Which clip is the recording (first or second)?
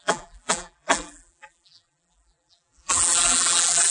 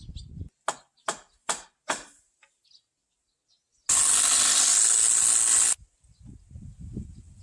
second